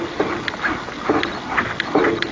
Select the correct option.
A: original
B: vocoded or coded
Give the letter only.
A